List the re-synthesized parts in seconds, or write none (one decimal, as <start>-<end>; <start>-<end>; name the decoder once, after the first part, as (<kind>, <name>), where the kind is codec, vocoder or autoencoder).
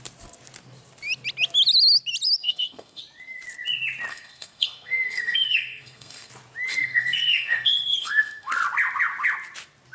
2.4-3.0 (codec, SNAC); 4.1-6.3; 6.7-8.5